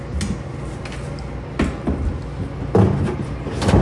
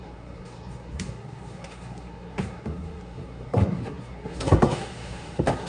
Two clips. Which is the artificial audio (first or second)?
second